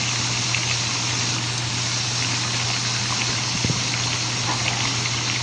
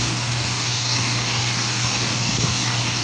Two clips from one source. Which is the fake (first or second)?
second